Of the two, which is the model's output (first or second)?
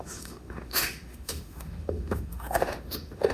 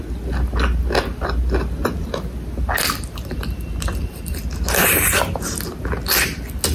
first